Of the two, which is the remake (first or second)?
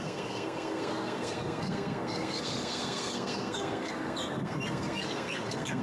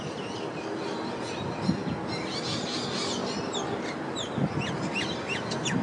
first